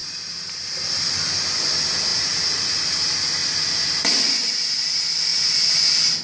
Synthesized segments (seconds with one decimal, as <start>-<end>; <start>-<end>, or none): 0.0-1.4; 2.1-2.7